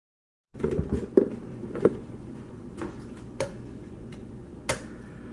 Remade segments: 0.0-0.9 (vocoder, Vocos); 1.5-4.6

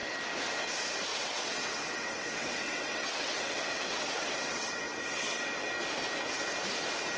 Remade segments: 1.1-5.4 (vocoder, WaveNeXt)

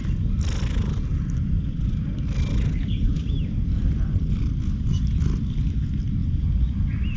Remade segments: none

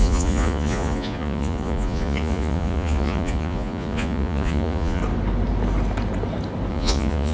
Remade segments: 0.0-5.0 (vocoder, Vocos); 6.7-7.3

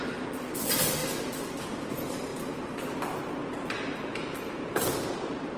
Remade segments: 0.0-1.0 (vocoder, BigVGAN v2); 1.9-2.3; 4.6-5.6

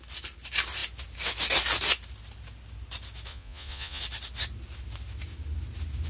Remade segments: 3.3-4.0 (vocoder, Vocos)

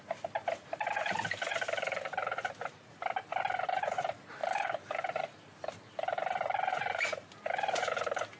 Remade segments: 0.0-8.4 (vocoder, BigVGAN v2)